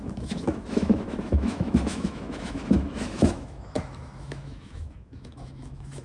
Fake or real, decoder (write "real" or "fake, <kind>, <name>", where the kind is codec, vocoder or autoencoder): fake, autoencoder, DAC-VAE